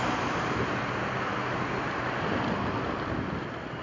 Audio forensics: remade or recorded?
recorded